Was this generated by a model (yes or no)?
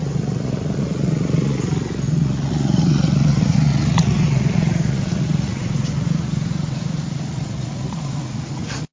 yes